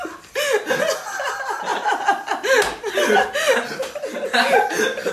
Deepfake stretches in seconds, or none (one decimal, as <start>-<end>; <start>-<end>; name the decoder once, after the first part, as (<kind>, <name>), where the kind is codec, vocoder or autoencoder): none